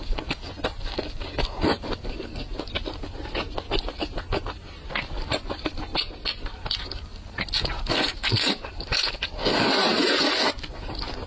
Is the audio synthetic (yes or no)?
no